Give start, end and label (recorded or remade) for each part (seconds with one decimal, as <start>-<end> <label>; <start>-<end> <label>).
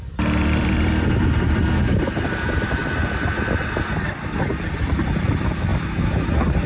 0.0-2.8 remade; 2.8-4.9 recorded; 4.9-5.7 remade; 5.7-6.7 recorded